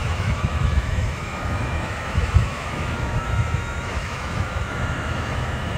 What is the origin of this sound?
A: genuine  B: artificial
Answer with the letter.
B